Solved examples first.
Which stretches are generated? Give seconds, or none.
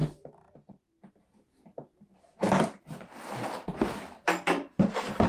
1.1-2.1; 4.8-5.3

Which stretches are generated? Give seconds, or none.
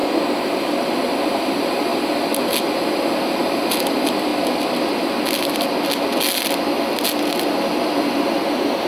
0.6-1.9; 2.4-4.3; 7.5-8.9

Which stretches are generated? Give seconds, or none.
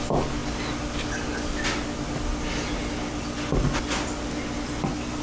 none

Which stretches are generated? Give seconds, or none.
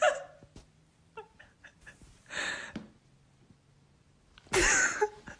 none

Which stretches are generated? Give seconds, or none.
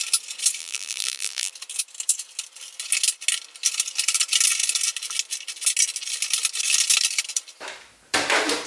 0.6-1.5